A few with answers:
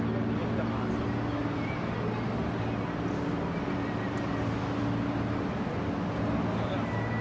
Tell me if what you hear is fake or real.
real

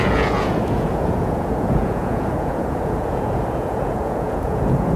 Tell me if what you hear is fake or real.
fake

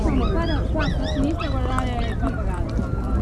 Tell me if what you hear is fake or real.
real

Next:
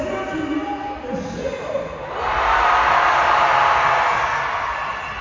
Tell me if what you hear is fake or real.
real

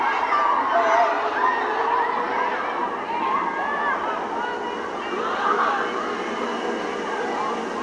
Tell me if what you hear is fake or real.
real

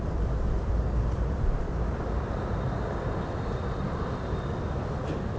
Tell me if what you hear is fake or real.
fake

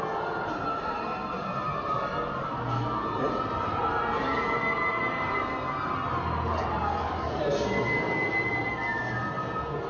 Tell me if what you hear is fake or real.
fake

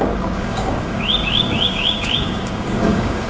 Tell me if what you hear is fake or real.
fake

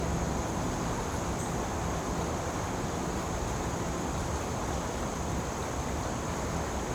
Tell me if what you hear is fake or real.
real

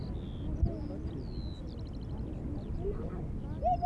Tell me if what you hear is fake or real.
real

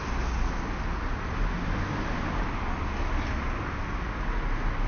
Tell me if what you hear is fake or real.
real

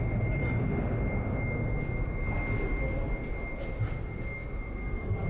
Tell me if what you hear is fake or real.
real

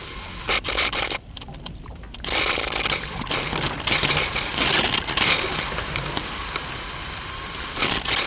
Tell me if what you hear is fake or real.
real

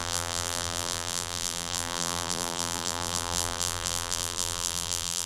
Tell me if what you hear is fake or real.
fake